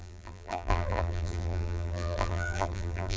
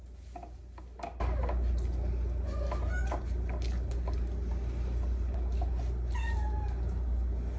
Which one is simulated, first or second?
first